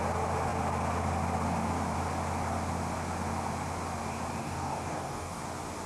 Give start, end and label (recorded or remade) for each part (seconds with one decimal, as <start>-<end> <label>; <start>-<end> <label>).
0.0-4.4 recorded; 4.4-5.4 remade; 5.4-5.9 recorded